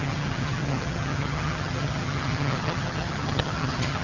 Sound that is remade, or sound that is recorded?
remade